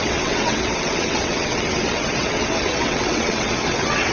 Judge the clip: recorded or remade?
remade